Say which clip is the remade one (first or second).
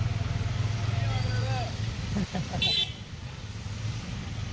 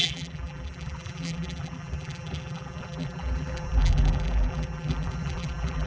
second